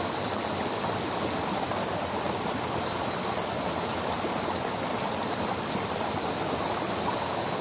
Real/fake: real